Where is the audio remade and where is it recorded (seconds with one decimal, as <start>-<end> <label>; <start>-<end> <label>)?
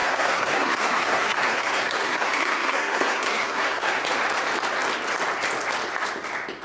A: 0.0-4.0 remade; 4.0-6.6 recorded